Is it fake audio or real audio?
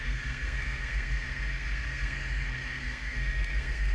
fake